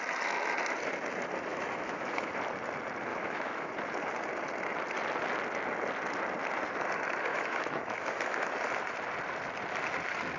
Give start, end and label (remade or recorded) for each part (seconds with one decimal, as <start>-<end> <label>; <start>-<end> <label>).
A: 0.0-1.5 recorded; 1.5-2.3 remade; 2.3-3.1 recorded; 3.1-3.7 remade; 3.7-7.3 recorded; 7.3-8.5 remade; 8.5-10.4 recorded